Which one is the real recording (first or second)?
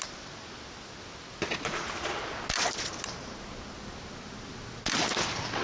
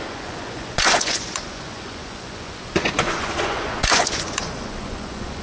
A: first